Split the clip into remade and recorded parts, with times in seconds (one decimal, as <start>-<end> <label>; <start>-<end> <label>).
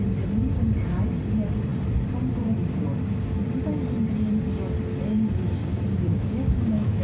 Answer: 0.0-5.6 recorded; 5.6-7.0 remade